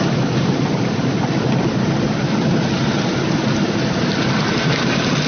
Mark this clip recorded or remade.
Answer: recorded